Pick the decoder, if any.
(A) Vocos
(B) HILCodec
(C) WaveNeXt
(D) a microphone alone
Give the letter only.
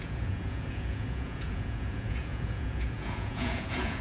A